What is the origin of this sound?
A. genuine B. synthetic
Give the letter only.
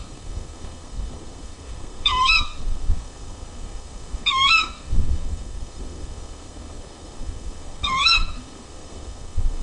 B